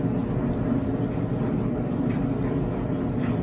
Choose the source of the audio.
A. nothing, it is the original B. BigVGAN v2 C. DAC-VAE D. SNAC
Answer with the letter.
B